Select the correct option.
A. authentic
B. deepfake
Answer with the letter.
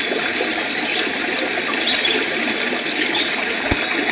A